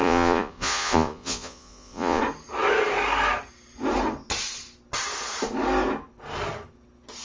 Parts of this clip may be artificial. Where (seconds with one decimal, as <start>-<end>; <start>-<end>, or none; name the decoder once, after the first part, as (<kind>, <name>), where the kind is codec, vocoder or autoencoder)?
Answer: 0.0-2.2 (vocoder, Vocos)